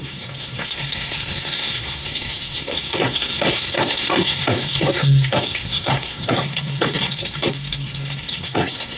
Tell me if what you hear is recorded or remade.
remade